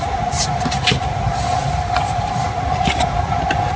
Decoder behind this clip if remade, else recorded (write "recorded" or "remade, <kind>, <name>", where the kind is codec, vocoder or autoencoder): remade, vocoder, BigVGAN v2